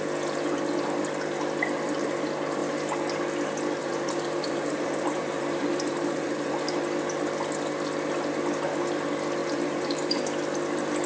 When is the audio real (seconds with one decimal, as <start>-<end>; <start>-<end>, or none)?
0.0-3.8; 6.8-9.4; 10.2-11.1